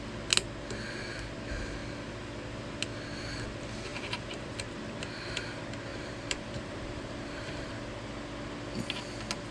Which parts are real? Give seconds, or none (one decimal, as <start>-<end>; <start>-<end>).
0.0-3.9; 4.8-5.9; 7.7-9.5